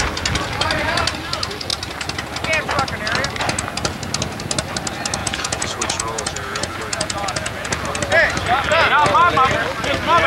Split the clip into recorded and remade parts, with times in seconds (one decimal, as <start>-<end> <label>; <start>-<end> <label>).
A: 0.0-5.2 recorded; 5.2-7.8 remade; 7.8-10.3 recorded